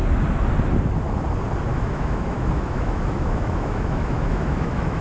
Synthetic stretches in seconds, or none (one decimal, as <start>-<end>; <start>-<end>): 1.7-5.0